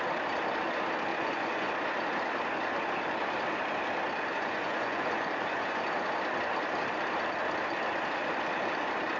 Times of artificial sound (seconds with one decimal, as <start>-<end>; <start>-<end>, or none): 1.1-1.7; 4.3-5.8